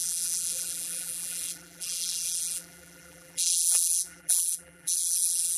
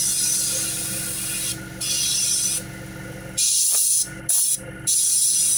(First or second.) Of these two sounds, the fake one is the first